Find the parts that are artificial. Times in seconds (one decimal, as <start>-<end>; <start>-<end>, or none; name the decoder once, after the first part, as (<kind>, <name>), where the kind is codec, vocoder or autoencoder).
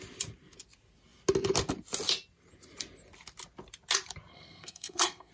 4.3-5.3 (codec, SNAC)